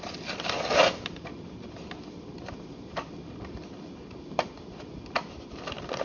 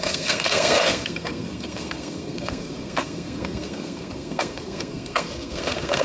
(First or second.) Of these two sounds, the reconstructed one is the second